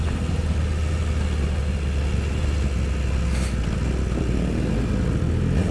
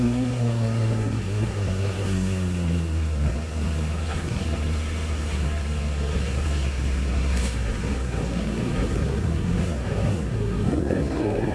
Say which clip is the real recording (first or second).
first